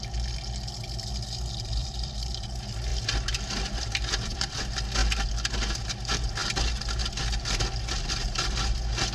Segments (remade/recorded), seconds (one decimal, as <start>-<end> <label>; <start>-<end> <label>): 0.0-1.8 recorded; 1.8-2.4 remade; 2.4-2.9 recorded; 2.9-4.6 remade; 4.6-9.1 recorded